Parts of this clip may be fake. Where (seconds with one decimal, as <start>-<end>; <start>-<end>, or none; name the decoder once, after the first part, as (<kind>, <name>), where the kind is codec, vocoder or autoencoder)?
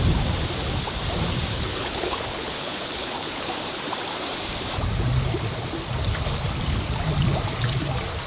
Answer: 1.5-3.5 (codec, HILCodec)